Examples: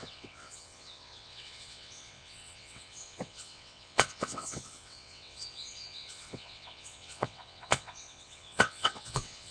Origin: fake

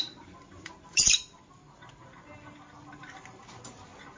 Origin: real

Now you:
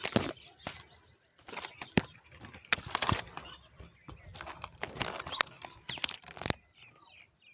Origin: real